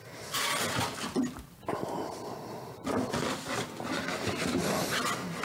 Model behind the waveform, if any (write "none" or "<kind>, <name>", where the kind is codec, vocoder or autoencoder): none